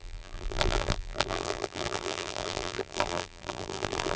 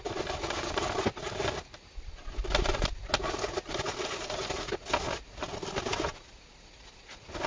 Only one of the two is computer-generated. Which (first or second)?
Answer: first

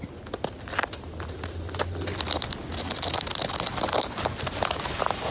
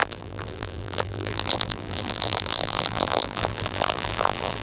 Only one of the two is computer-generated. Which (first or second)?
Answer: second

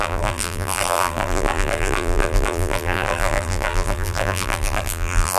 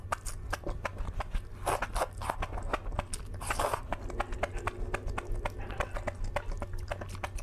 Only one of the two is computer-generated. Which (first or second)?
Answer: first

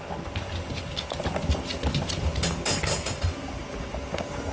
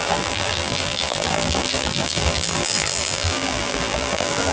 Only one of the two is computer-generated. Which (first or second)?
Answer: second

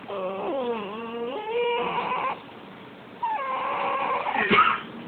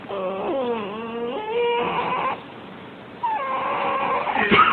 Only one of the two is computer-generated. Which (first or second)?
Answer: first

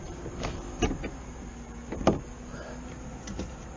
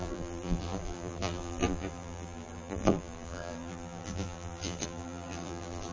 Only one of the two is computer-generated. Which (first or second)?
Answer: second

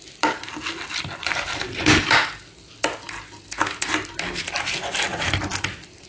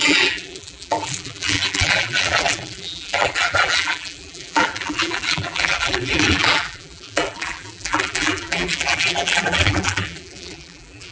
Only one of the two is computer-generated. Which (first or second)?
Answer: second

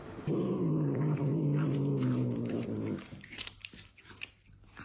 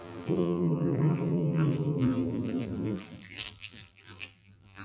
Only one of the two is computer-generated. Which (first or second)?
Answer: second